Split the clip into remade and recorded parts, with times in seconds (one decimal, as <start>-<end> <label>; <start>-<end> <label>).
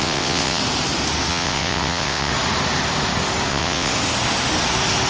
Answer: 0.0-0.6 remade; 0.6-1.3 recorded; 1.3-2.3 remade; 2.3-3.5 recorded; 3.5-3.9 remade; 3.9-5.1 recorded